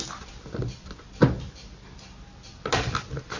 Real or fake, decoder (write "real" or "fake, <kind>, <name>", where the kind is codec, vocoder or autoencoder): real